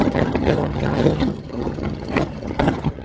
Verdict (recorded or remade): remade